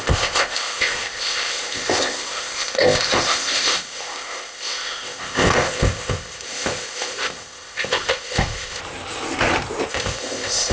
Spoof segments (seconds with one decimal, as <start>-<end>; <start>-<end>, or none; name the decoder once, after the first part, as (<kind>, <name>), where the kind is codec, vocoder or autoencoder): 0.0-8.8 (codec, ZipCodec); 9.9-10.7